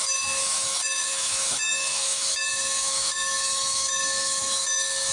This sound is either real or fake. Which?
fake